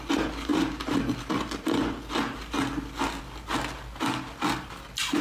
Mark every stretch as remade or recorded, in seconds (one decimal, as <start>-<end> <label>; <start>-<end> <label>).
0.0-5.2 recorded